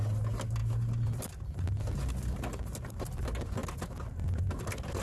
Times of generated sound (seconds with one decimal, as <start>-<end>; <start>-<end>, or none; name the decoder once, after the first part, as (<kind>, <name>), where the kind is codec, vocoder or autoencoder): none